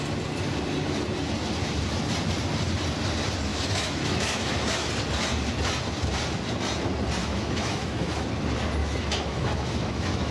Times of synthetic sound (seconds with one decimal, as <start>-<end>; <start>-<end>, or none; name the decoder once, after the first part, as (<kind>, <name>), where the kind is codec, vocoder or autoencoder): 3.5-4.9 (autoencoder, DAC-VAE); 7.2-8.3; 8.8-10.3